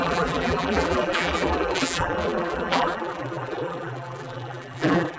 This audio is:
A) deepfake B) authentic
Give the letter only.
A